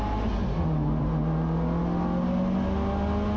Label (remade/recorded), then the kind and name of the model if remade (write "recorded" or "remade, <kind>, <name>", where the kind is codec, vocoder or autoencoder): recorded